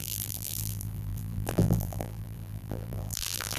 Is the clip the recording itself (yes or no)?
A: no